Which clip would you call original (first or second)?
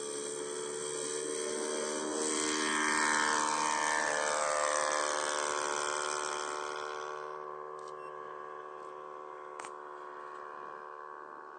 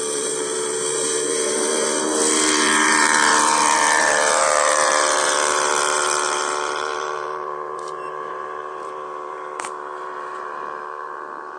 first